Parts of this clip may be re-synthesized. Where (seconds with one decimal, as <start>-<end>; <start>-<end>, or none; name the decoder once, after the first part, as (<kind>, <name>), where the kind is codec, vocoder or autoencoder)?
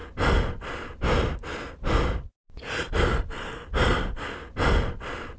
none